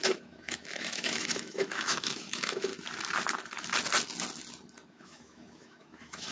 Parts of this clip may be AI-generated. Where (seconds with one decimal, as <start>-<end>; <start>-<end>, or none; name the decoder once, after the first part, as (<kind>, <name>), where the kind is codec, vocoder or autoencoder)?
0.0-2.7 (autoencoder, DAC-VAE); 4.9-6.3